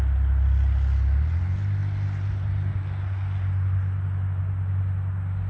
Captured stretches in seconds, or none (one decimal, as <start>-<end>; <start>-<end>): 0.0-5.5